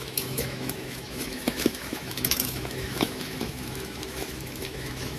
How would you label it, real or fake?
fake